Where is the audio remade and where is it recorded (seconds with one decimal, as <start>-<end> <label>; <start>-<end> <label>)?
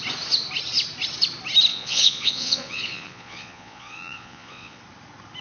0.0-1.7 recorded; 1.7-4.8 remade; 4.8-5.4 recorded